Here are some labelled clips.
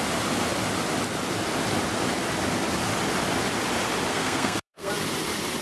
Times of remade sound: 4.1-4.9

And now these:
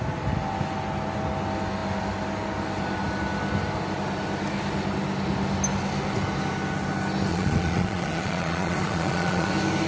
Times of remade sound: 7.3-9.5